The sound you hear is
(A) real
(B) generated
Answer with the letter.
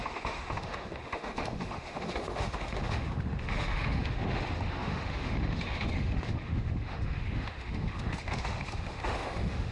B